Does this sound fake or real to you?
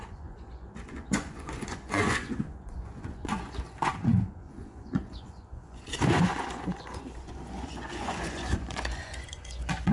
fake